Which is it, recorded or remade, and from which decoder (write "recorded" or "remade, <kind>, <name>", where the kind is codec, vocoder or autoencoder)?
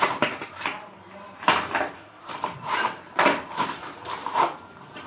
remade, vocoder, BigVGAN v2